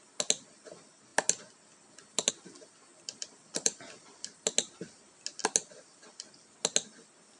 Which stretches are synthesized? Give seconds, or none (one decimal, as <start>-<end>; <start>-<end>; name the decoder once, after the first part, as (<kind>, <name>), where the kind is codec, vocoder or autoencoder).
2.9-4.4 (vocoder, BigVGAN v2)